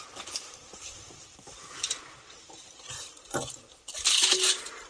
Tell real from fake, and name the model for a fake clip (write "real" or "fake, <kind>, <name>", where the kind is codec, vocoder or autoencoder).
real